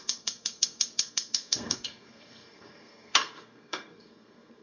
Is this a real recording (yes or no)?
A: no